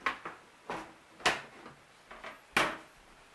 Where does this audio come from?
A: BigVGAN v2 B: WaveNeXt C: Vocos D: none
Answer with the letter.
D